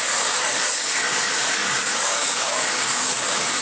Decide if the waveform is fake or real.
fake